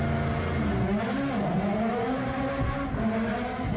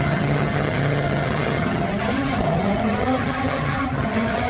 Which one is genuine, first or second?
first